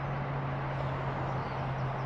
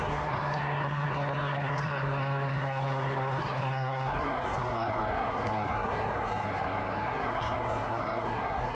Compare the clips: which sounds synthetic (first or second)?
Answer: second